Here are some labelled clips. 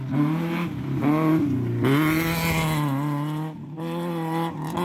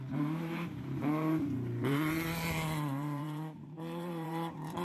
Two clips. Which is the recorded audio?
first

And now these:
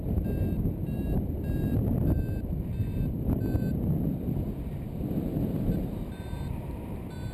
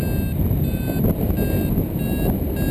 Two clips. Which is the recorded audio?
second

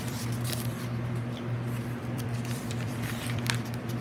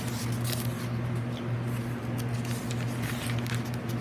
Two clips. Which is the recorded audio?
second